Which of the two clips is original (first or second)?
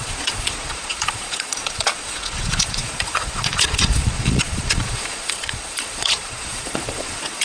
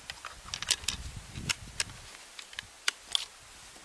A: second